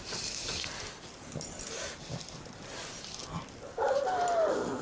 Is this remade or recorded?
recorded